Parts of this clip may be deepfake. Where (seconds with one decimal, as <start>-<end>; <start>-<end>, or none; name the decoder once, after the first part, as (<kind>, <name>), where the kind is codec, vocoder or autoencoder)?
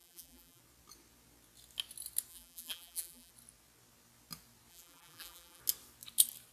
0.0-0.6 (vocoder, BigVGAN v2); 2.3-3.3; 4.7-5.6